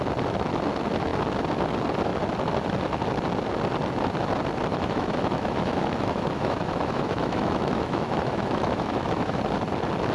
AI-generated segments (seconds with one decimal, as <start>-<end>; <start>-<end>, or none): 4.7-9.4